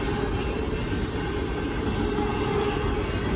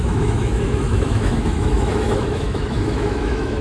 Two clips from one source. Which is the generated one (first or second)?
second